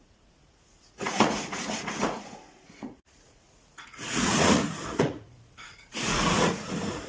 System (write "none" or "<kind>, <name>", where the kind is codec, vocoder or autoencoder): vocoder, Vocos